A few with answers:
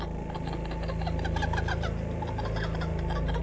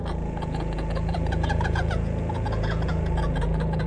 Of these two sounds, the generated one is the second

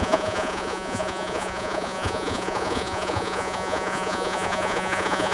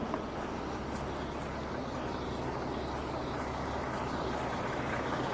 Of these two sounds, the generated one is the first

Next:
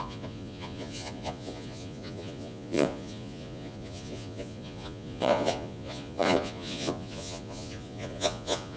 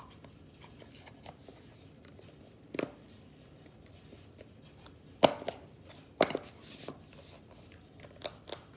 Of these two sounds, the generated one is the first